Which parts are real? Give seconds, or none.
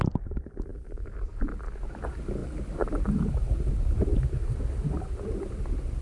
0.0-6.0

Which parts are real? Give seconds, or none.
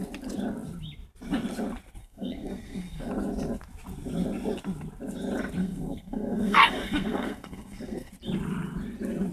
0.0-2.0; 3.1-5.6; 8.1-9.3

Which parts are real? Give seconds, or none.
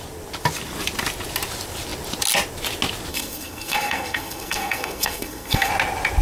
0.0-3.1; 5.7-6.2